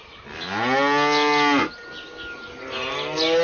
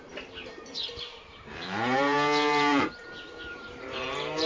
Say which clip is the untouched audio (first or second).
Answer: first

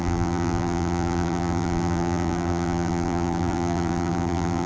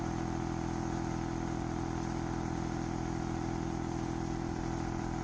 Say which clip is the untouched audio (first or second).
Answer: second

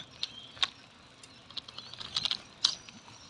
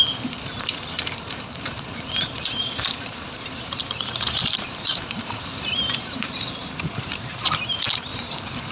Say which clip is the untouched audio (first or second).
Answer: first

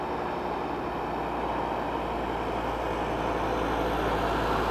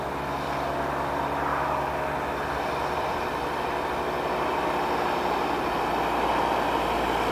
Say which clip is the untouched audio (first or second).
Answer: first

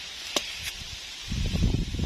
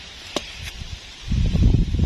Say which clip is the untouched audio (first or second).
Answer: first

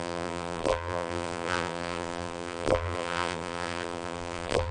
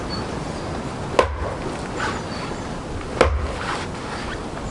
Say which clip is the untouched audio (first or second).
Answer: second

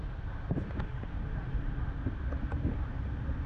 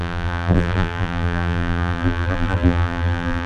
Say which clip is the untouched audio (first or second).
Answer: first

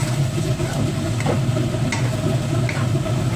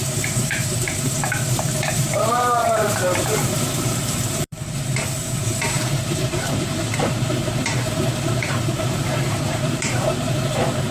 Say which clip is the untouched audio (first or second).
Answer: first